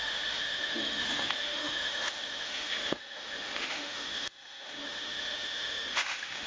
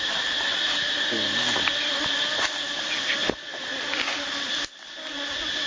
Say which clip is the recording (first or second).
second